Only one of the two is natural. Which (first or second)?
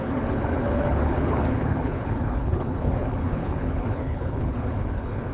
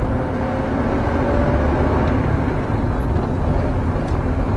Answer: second